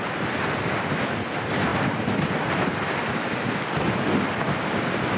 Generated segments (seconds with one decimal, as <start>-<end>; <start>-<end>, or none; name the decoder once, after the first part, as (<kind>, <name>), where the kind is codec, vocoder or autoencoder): none